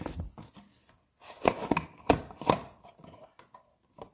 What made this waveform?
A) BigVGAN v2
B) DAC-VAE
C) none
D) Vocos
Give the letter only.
C